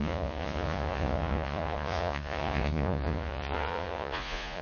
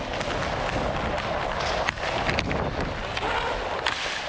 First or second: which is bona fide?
second